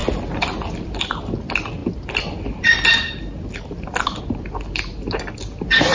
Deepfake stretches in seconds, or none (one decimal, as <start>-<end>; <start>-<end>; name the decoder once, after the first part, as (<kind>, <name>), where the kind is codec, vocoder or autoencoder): none